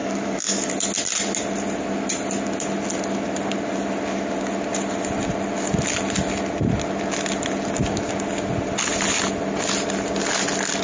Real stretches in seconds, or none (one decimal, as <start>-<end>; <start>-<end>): 0.7-10.8